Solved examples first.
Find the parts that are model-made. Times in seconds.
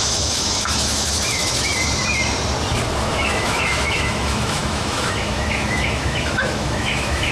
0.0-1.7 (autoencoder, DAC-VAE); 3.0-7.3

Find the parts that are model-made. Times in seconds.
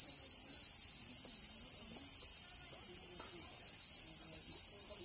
none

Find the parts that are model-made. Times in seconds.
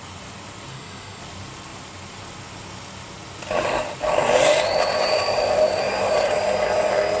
0.7-1.2 (autoencoder, DAC-VAE)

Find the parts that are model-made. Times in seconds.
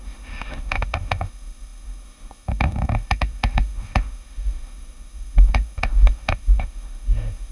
0.0-7.5 (autoencoder, DAC-VAE)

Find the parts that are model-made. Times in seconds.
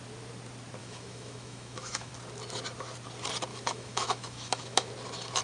0.8-2.1 (autoencoder, DAC-VAE); 3.5-4.9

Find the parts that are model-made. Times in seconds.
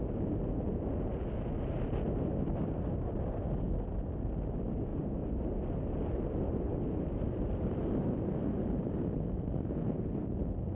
none